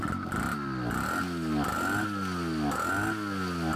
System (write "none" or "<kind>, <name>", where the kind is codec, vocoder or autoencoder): none